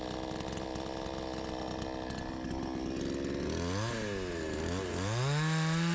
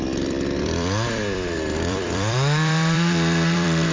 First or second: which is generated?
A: second